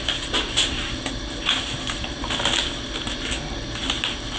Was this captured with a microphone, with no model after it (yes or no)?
yes